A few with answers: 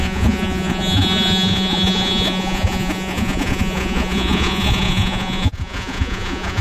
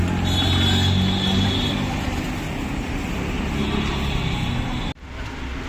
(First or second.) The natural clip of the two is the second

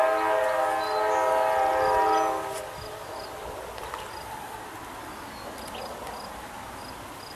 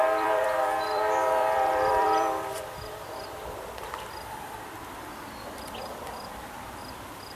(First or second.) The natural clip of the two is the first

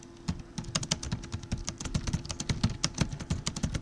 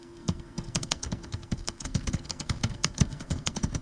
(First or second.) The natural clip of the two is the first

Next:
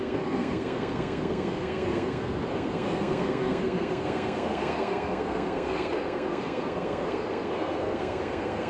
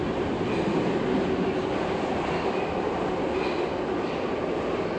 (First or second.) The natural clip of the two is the second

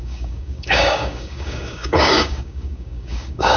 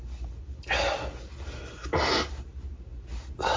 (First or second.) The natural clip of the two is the second